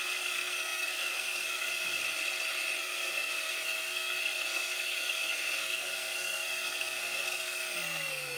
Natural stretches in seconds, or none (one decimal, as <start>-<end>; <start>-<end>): 2.0-2.8